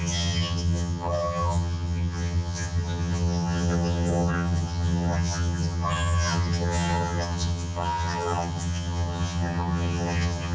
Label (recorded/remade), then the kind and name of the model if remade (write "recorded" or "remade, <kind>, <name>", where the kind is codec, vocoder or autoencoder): remade, vocoder, HiFi-GAN